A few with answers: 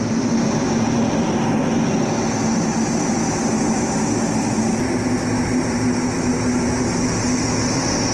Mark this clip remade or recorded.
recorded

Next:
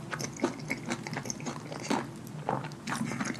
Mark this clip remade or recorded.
recorded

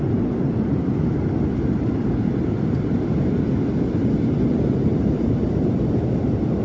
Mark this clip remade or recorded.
recorded